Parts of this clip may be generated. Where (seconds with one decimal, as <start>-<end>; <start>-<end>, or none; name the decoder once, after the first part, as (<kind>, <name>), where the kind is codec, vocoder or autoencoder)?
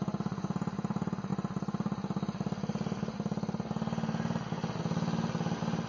none